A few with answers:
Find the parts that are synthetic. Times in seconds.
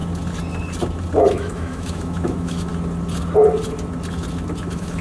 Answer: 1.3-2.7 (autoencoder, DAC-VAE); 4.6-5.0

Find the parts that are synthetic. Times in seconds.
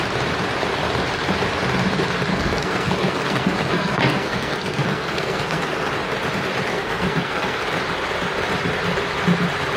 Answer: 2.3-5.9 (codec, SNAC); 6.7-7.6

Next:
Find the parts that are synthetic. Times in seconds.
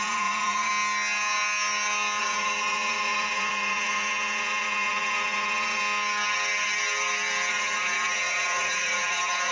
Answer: 0.0-0.7 (vocoder, Vocos); 2.2-5.8; 7.5-9.5